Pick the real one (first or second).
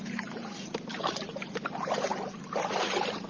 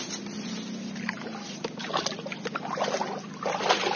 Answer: second